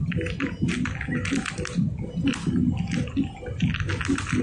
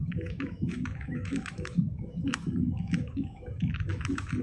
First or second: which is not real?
second